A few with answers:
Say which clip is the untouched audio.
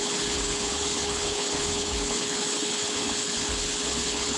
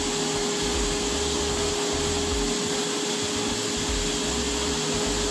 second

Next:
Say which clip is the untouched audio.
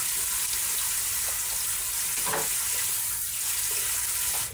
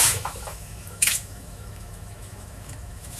first